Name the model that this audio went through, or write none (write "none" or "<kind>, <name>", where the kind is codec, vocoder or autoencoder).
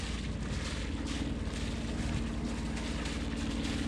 none